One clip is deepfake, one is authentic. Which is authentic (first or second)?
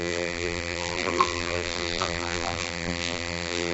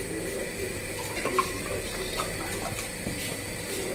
second